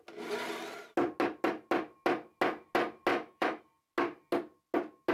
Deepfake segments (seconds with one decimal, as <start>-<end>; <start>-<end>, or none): 3.1-3.6